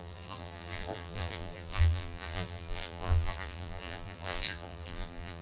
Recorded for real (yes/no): no